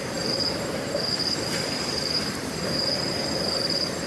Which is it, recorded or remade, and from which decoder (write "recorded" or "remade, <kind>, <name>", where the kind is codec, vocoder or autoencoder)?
remade, vocoder, BigVGAN v2